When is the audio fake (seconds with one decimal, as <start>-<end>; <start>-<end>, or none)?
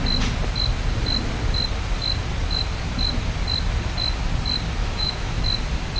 4.8-5.4